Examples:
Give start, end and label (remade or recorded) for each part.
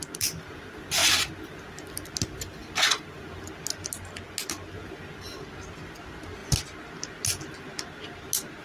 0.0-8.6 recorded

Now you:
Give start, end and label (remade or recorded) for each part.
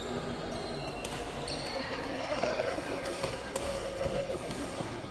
0.0-1.8 recorded; 1.8-5.1 remade